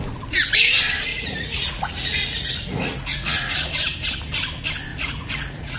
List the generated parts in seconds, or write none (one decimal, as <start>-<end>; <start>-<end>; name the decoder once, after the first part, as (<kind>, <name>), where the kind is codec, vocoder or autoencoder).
1.1-3.7 (vocoder, Vocos); 4.9-5.8